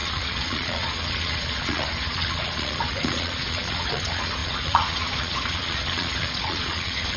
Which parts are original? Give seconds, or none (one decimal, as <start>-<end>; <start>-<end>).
none